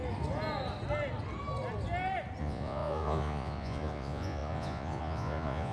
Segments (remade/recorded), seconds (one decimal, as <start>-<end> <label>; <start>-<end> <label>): 0.0-2.4 recorded; 2.4-5.7 remade